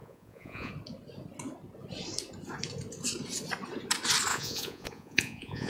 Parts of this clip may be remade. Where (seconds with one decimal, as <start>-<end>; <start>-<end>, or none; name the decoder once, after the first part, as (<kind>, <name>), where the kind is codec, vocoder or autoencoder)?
0.0-0.7 (vocoder, Vocos); 4.3-5.7